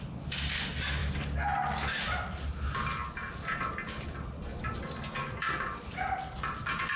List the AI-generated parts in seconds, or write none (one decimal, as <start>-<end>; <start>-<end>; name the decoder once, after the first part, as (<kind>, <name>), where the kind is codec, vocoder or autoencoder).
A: none